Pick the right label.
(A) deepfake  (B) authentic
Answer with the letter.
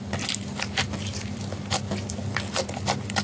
B